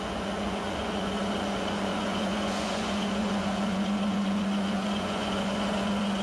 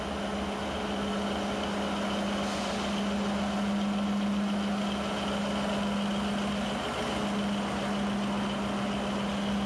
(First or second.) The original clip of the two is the second